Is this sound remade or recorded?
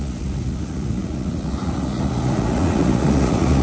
remade